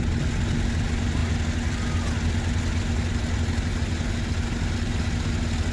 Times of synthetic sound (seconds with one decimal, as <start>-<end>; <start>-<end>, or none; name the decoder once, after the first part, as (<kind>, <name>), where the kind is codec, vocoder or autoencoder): none